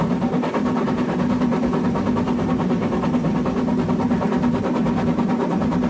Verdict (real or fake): real